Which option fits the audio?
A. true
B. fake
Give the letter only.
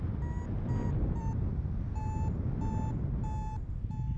A